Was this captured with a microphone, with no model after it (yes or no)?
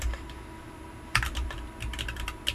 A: no